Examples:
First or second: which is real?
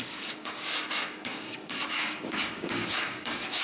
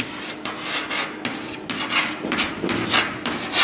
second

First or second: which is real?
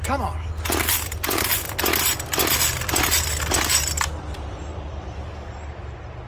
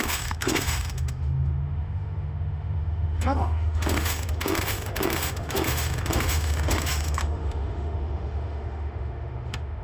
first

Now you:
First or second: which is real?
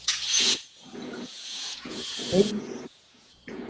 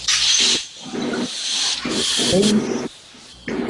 second